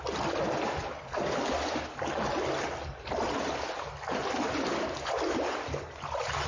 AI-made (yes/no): no